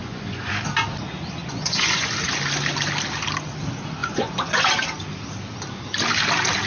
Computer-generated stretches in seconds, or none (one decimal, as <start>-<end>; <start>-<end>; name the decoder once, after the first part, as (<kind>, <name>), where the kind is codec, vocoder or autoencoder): 0.0-0.5 (vocoder, Vocos); 1.4-2.1; 4.0-4.6